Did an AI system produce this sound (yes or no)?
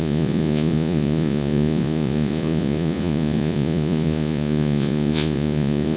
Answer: yes